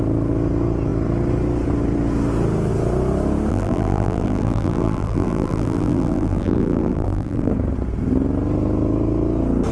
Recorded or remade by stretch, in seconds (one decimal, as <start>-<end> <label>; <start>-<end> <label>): 0.0-3.5 recorded; 3.5-7.5 remade; 7.5-9.7 recorded